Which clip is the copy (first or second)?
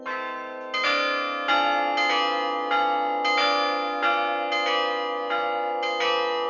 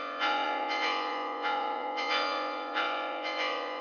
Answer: second